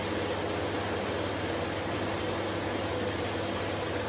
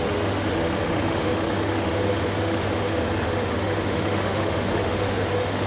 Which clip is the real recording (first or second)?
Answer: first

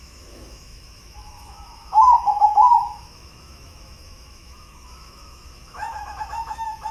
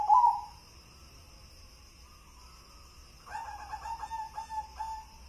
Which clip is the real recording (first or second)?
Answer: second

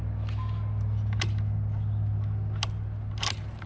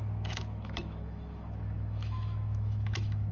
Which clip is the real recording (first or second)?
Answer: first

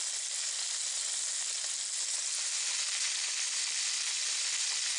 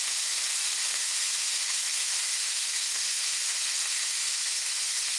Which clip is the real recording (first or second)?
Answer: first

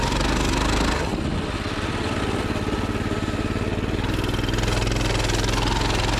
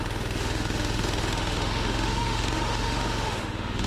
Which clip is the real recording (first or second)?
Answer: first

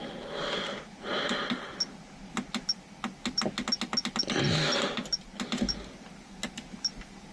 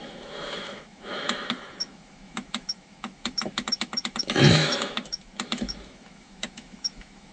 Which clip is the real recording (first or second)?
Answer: first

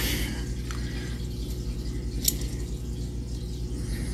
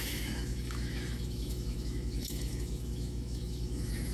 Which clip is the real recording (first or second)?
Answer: first